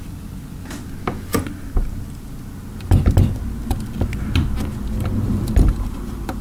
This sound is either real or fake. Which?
real